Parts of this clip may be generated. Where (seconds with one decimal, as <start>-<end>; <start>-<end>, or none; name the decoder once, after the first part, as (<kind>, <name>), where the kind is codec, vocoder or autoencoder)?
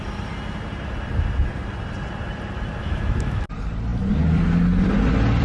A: 2.8-3.5 (autoencoder, DAC-VAE)